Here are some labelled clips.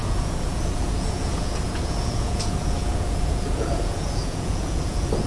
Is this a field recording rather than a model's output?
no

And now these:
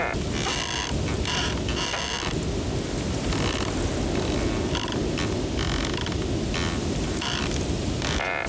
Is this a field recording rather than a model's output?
yes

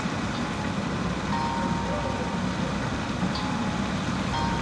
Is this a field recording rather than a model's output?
yes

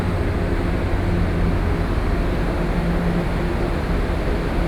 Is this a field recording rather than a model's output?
yes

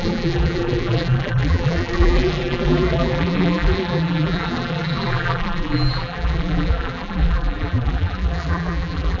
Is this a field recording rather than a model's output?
no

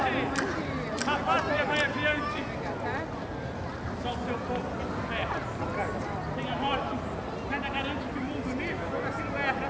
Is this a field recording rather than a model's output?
yes